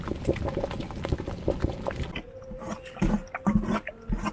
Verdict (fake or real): real